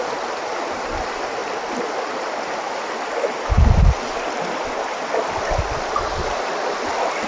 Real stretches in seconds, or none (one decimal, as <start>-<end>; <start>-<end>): 0.0-7.3